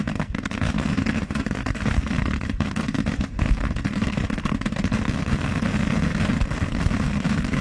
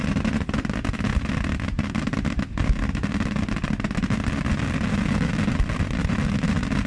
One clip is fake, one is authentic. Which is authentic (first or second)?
second